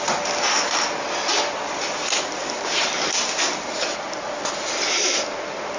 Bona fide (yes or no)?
yes